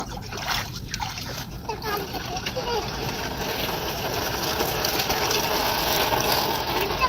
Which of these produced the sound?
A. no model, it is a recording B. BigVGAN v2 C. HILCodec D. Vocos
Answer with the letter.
A